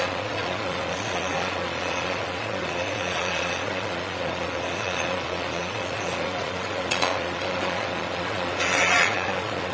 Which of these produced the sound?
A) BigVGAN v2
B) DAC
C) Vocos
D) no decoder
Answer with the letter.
C